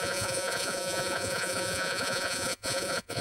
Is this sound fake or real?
fake